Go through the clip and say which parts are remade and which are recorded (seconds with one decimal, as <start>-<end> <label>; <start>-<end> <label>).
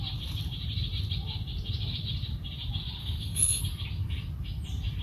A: 0.0-3.0 recorded; 3.0-3.6 remade; 3.6-5.0 recorded